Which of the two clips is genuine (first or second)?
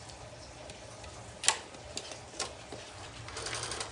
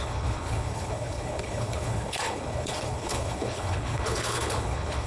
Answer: first